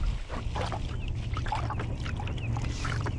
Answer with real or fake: real